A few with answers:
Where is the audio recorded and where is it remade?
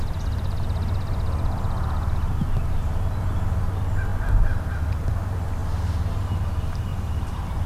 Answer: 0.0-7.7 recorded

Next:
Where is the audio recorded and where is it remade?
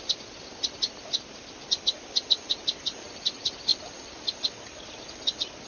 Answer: 0.0-5.7 recorded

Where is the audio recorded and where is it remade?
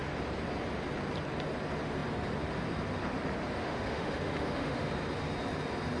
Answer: 0.0-3.6 recorded; 3.6-4.9 remade; 4.9-6.0 recorded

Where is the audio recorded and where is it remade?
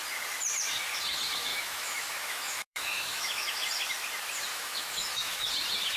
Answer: 0.0-1.5 recorded; 1.5-3.6 remade; 3.6-4.5 recorded; 4.5-5.5 remade; 5.5-6.0 recorded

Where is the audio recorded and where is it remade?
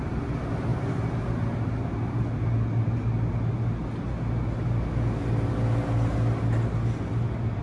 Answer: 0.0-7.6 recorded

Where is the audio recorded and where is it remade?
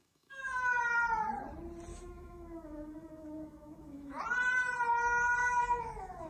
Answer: 0.0-0.8 remade; 0.8-1.9 recorded; 1.9-4.2 remade; 4.2-5.4 recorded; 5.4-6.3 remade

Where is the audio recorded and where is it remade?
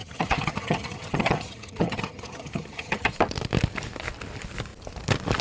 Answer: 0.0-3.1 remade; 3.1-5.4 recorded